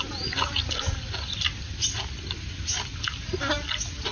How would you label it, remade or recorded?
recorded